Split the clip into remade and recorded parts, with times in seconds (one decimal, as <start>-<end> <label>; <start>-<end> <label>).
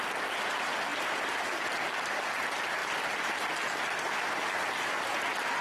0.0-5.6 recorded